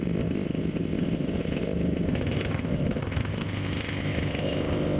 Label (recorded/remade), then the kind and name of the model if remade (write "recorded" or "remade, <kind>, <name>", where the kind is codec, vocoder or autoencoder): remade, codec, ZipCodec